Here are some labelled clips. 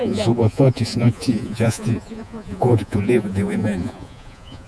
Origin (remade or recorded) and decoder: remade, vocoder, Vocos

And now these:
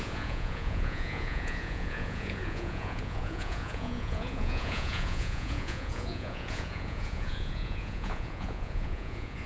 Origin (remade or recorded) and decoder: remade, vocoder, Vocos